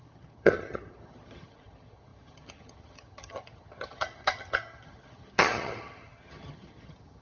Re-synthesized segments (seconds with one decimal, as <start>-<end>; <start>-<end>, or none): 0.0-7.2